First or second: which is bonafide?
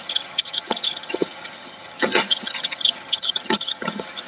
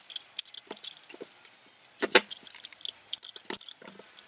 second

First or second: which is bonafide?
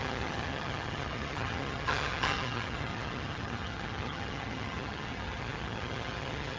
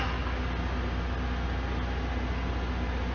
second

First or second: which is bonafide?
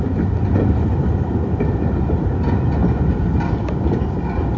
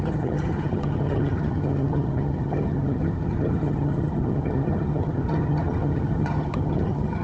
first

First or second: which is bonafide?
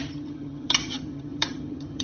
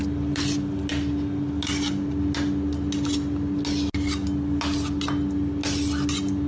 second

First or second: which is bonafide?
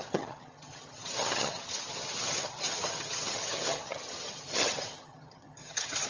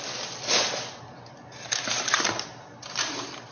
second